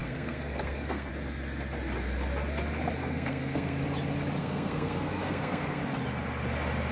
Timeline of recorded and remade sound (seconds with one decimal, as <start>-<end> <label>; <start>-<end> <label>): 0.0-1.1 remade; 1.1-3.0 recorded; 3.0-3.8 remade; 3.8-4.4 recorded; 4.4-5.8 remade; 5.8-6.9 recorded